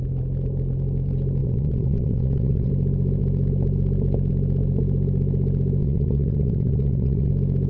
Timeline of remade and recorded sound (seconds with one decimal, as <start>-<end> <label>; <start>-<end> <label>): 0.0-1.4 recorded; 1.4-2.7 remade; 2.7-5.8 recorded; 5.8-7.3 remade; 7.3-7.7 recorded